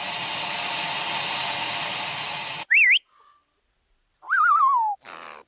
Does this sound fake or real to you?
real